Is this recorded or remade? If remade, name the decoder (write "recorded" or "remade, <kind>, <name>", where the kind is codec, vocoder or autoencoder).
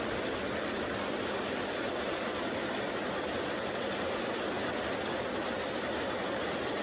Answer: recorded